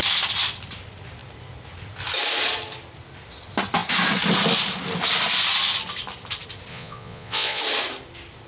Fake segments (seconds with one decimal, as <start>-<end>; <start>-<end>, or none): 6.7-7.6